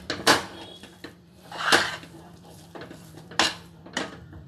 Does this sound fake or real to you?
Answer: real